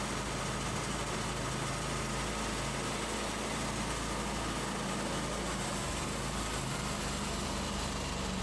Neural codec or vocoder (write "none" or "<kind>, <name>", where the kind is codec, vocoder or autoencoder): none